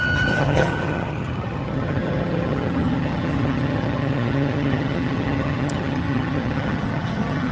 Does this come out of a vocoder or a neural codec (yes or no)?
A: yes